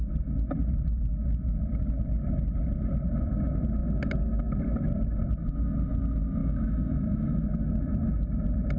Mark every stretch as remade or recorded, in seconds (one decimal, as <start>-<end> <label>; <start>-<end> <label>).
0.0-3.8 recorded; 3.8-4.6 remade; 4.6-6.4 recorded; 6.4-8.1 remade; 8.1-8.8 recorded

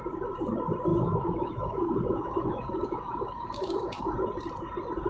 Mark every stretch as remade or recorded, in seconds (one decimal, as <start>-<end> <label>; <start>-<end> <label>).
0.0-0.9 recorded; 0.9-4.0 remade; 4.0-5.1 recorded

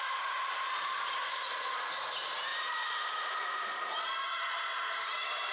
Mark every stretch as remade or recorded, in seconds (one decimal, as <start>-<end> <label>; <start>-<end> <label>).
0.0-5.5 recorded

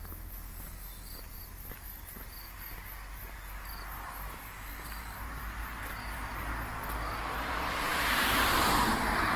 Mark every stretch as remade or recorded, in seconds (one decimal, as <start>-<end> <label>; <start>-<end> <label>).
0.0-9.4 recorded

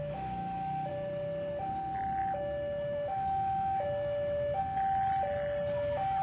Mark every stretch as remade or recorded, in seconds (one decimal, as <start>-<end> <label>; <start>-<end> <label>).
0.0-0.9 remade; 0.9-2.2 recorded; 2.2-4.6 remade; 4.6-6.2 recorded

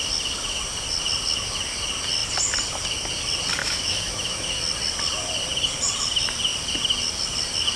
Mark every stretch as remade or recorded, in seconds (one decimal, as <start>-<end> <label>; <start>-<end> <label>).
0.0-3.6 recorded; 3.6-4.6 remade; 4.6-7.8 recorded

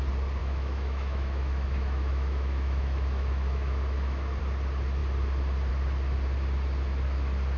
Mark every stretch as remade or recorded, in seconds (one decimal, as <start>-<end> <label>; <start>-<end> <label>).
0.0-0.4 recorded; 0.4-4.4 remade; 4.4-7.6 recorded